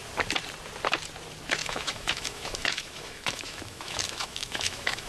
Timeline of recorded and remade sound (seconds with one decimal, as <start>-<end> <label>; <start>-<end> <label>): 0.0-1.6 recorded; 1.6-5.1 remade